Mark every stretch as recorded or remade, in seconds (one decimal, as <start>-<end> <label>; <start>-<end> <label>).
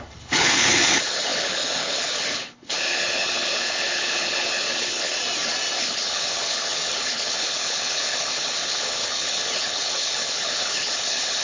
0.0-5.2 remade; 5.2-5.8 recorded; 5.8-11.4 remade